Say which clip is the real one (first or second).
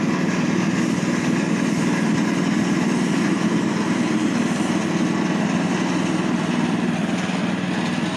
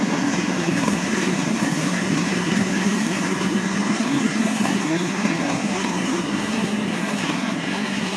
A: first